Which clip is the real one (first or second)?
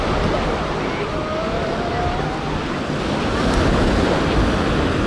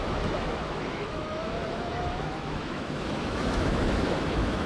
first